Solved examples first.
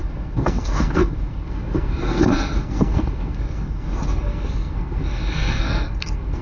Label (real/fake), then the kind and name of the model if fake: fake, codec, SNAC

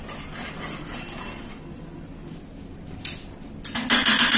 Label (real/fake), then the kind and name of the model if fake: real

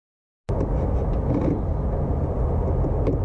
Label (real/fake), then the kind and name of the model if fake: real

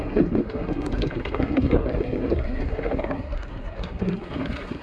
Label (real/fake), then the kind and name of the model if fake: fake, codec, SNAC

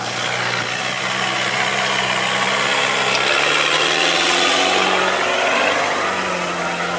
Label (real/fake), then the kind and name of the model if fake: real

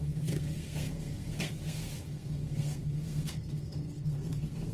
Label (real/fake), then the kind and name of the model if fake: fake, codec, SNAC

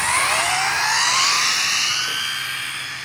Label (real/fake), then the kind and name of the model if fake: real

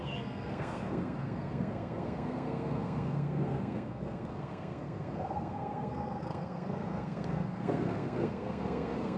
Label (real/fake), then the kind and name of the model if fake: fake, codec, SNAC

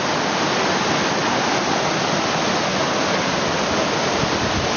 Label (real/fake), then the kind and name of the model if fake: real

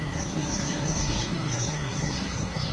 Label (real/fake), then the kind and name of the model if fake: fake, codec, SNAC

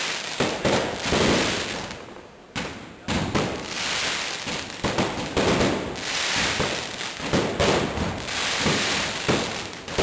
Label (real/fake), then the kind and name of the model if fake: real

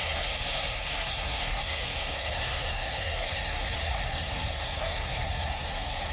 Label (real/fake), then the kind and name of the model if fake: fake, codec, SNAC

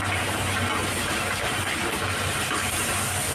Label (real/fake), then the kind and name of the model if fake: real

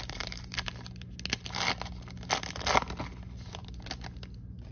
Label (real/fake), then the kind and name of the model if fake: real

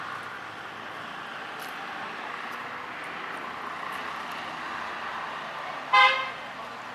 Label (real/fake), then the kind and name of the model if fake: real